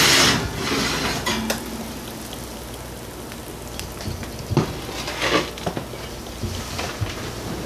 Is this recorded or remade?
recorded